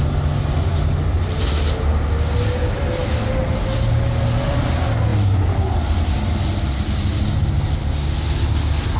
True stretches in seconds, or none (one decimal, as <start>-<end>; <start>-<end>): 0.0-9.0